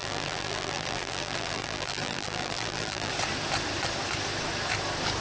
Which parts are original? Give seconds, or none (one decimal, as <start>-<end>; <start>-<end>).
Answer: 3.1-5.2